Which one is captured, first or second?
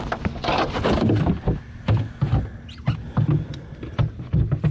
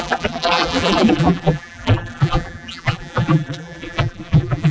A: first